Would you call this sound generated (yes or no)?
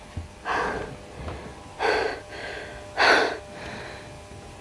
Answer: no